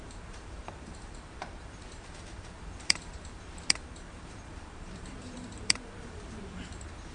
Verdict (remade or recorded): remade